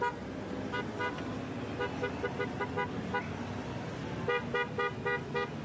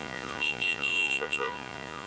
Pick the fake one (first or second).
second